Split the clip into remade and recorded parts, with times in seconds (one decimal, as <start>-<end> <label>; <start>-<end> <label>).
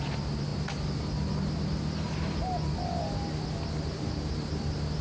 0.0-5.0 recorded